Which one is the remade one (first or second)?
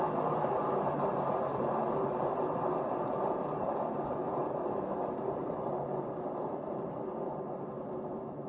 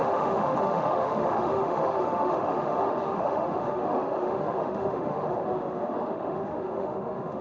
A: second